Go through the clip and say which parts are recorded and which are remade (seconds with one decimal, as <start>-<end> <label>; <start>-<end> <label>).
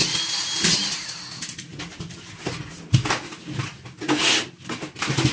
0.0-5.3 recorded